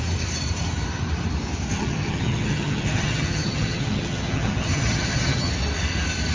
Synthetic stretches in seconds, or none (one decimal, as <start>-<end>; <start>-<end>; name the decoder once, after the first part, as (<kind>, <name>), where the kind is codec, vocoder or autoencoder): 1.7-5.5 (vocoder, HiFi-GAN)